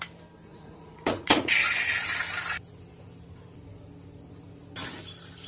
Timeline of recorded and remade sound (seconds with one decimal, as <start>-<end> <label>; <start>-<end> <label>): 0.0-0.5 recorded; 0.5-1.5 remade; 1.5-5.5 recorded